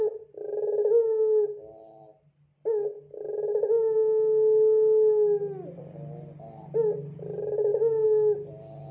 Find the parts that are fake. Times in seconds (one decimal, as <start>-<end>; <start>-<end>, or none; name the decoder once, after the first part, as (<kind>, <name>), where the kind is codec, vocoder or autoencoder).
none